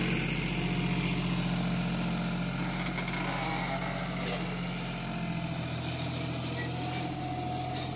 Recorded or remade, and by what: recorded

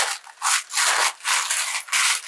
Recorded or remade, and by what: recorded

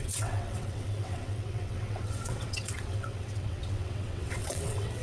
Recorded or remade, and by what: remade, vocoder, WaveNeXt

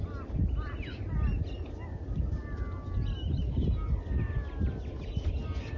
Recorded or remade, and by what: recorded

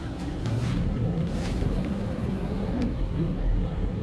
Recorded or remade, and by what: remade, codec, SNAC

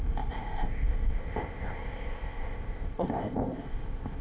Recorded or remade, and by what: remade, codec, ZipCodec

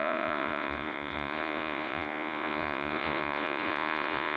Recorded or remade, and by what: remade, vocoder, Vocos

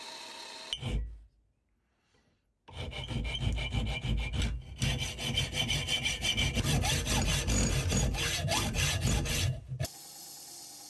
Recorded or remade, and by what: recorded